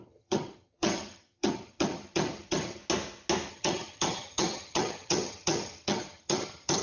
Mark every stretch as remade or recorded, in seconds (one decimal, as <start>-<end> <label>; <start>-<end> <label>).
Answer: 0.0-2.8 remade; 2.8-3.5 recorded; 3.5-6.8 remade